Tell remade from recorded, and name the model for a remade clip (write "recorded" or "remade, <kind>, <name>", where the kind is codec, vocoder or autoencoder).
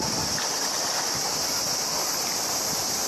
recorded